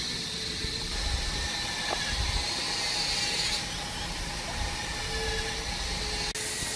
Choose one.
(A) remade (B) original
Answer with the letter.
B